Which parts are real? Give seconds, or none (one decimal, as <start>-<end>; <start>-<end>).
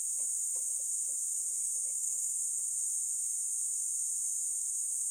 0.0-1.6; 2.4-5.1